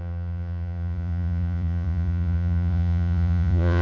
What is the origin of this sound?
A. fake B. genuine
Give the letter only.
A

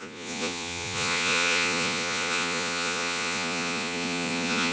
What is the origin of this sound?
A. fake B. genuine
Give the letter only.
A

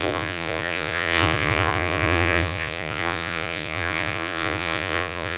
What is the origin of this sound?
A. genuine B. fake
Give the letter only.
B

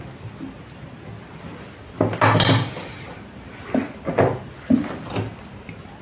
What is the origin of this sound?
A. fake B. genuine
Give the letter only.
B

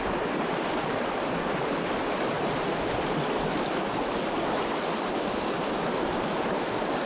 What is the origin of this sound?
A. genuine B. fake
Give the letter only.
A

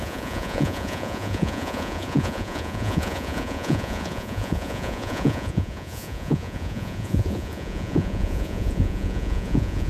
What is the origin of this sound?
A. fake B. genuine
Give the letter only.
A